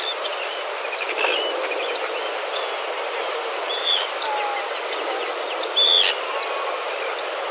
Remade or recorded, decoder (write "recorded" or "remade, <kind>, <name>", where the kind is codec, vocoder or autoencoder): recorded